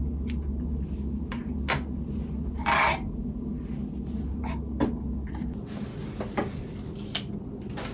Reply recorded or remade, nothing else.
recorded